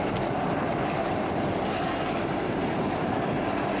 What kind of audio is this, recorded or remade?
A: recorded